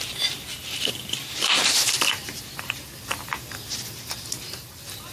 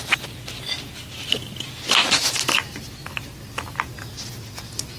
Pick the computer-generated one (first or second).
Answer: first